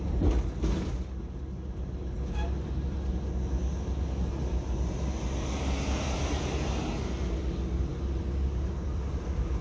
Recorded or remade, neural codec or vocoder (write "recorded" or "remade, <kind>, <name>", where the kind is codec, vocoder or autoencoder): recorded